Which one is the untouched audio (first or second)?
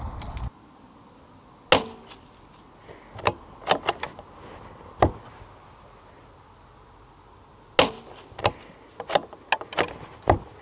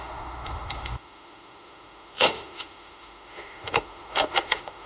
first